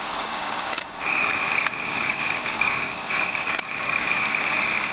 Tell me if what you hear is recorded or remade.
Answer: remade